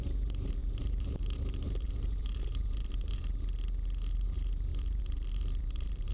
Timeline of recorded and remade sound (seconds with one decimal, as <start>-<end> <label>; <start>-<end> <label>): 0.0-3.2 remade; 3.2-4.1 recorded; 4.1-6.1 remade